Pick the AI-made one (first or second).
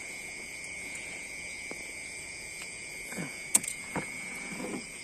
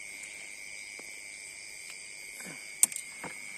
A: first